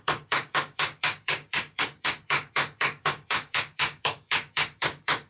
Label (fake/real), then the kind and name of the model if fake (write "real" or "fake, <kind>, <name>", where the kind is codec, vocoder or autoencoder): fake, codec, DAC